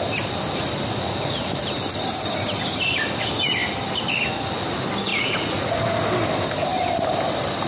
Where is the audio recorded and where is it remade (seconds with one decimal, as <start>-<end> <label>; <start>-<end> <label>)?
0.0-5.1 recorded; 5.1-5.8 remade; 5.8-7.7 recorded

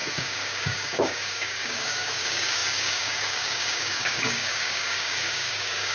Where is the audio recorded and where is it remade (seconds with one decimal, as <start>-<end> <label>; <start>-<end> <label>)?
0.0-5.9 remade

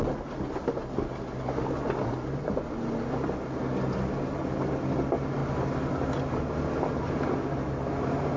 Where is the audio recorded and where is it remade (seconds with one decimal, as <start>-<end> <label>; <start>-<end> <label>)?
0.0-8.4 recorded

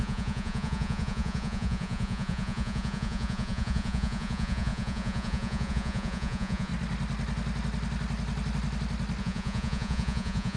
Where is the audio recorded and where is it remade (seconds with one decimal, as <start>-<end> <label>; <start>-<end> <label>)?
0.0-6.7 remade; 6.7-9.2 recorded; 9.2-10.6 remade